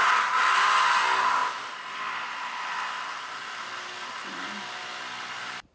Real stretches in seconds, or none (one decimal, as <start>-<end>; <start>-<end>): 0.0-5.7